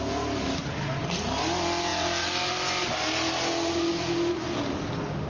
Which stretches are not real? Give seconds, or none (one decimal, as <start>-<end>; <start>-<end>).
none